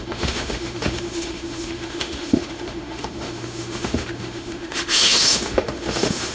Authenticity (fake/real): fake